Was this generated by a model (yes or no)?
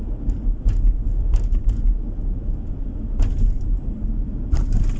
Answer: no